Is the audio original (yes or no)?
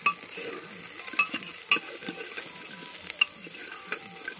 yes